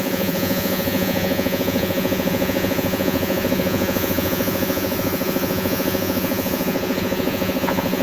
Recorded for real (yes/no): no